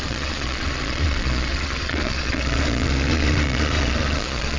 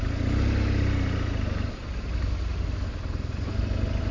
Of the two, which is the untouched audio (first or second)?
second